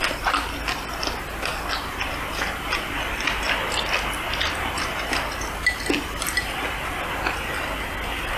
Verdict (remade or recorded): recorded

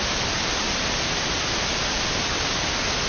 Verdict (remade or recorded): recorded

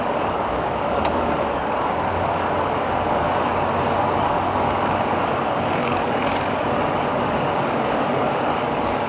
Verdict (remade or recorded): remade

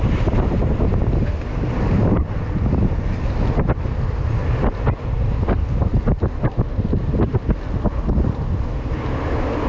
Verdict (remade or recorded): recorded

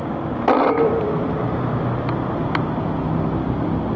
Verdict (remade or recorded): recorded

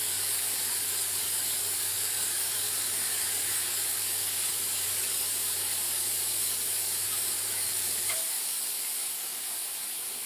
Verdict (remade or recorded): remade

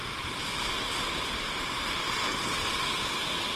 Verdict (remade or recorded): recorded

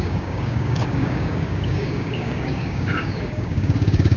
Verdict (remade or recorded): remade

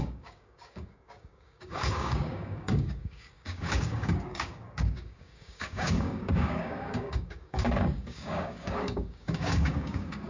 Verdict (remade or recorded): remade